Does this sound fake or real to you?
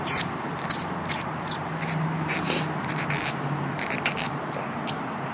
fake